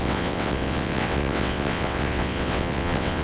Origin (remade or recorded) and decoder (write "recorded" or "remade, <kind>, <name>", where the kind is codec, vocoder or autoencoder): remade, vocoder, WaveNeXt